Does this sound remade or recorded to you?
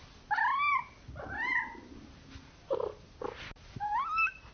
recorded